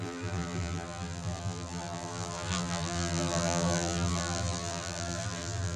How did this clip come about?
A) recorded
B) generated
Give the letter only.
B